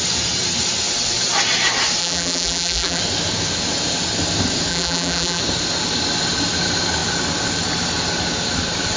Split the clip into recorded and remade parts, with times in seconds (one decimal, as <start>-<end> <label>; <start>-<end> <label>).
0.0-2.0 recorded; 2.0-3.0 remade; 3.0-4.7 recorded; 4.7-5.4 remade; 5.4-9.0 recorded